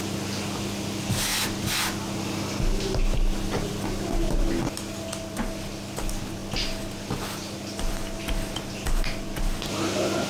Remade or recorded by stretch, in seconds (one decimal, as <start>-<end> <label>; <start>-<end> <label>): 0.0-10.3 recorded